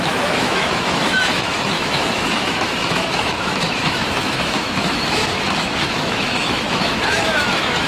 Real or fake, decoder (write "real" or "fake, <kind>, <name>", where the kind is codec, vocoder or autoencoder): fake, autoencoder, DAC-VAE